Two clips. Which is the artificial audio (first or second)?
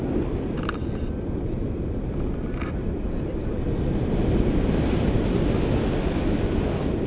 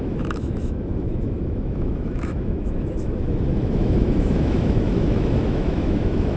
second